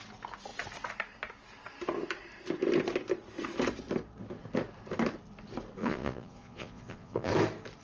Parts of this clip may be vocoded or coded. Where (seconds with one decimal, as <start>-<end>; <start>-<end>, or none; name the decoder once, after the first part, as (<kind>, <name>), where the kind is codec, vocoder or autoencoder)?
5.8-7.3 (vocoder, Vocos)